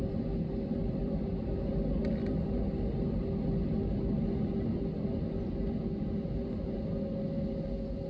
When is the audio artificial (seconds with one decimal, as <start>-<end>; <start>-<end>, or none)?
1.0-1.8